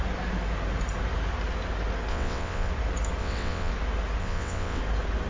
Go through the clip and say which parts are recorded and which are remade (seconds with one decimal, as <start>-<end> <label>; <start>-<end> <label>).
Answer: 0.0-2.1 recorded; 2.1-2.7 remade; 2.7-3.2 recorded; 3.2-3.7 remade; 3.7-4.2 recorded; 4.2-4.8 remade; 4.8-5.3 recorded